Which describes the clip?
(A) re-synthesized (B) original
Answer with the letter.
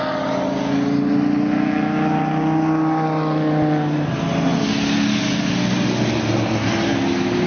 B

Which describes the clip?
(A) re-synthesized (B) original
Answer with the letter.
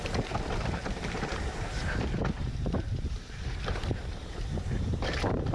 A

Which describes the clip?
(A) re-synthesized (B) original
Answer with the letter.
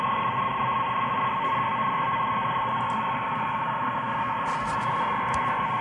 B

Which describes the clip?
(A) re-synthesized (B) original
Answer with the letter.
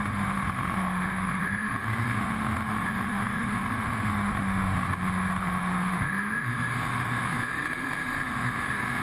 A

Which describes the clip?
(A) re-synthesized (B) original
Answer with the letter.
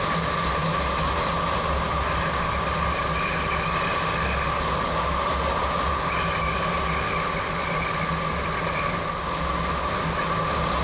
B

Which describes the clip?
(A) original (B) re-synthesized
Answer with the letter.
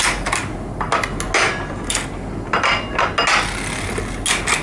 A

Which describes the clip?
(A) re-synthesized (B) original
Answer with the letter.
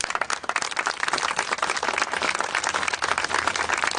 A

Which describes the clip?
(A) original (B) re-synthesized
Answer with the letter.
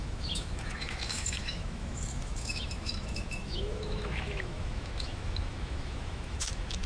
B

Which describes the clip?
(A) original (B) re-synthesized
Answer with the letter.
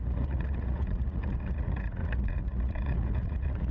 B